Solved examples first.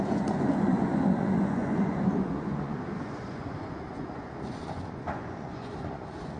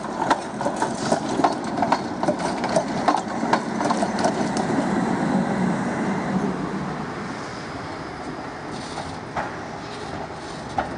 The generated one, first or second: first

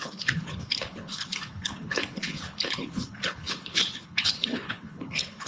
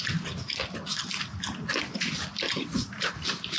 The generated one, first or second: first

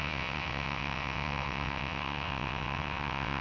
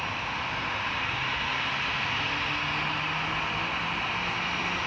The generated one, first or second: first